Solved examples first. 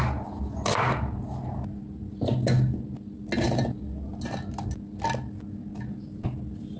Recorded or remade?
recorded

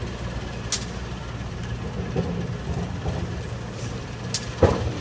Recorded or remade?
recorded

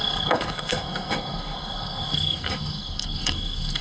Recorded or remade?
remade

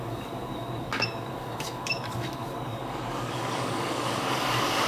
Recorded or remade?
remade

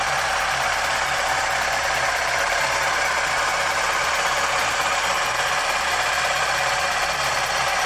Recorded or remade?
recorded